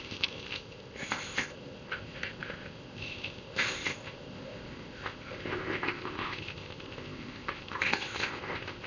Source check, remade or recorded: remade